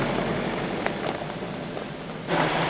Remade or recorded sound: recorded